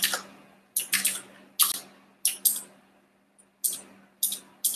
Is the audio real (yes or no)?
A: yes